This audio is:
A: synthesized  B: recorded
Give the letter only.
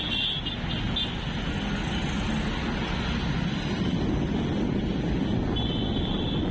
B